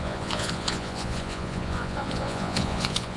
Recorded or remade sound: remade